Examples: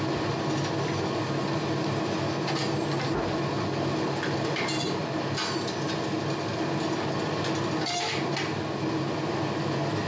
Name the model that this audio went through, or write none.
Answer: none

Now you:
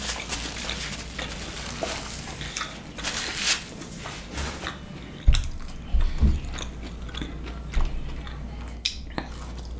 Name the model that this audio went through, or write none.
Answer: none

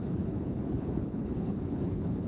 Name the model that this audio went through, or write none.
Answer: codec, HILCodec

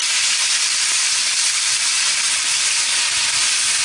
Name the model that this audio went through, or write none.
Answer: none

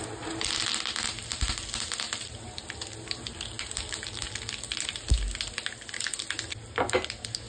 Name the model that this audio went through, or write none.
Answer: none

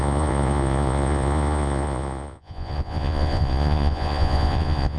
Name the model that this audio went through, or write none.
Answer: vocoder, Vocos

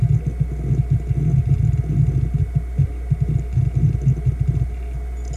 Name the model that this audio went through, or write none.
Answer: none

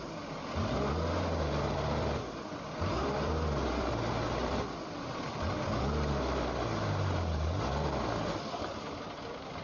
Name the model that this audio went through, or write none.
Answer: none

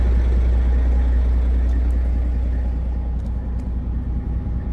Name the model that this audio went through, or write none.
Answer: none